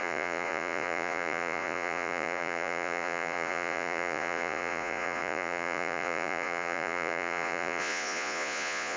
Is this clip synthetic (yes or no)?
yes